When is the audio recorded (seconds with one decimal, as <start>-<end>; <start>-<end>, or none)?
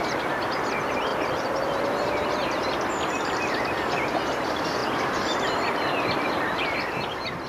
none